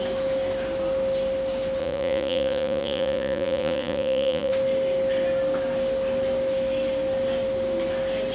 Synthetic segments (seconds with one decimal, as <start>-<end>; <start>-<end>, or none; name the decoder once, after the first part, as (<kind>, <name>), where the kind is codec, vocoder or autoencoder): 1.8-4.5 (vocoder, Vocos)